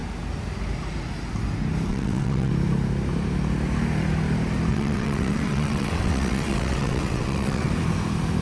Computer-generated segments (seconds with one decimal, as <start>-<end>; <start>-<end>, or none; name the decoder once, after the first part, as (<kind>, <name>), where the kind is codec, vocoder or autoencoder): 1.9-2.5 (vocoder, WaveNeXt); 4.7-7.7